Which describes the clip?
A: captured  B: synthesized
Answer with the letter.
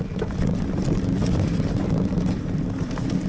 A